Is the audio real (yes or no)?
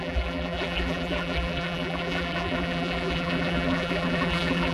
no